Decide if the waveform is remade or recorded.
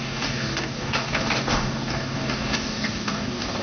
remade